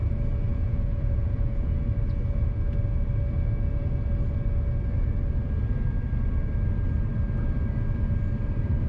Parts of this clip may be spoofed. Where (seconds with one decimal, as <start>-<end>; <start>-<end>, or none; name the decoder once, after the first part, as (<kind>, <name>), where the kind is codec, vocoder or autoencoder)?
0.5-1.7 (vocoder, Vocos)